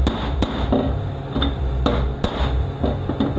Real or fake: real